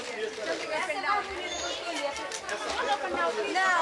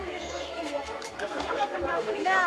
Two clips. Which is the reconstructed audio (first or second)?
second